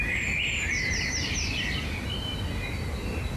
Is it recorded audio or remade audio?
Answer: recorded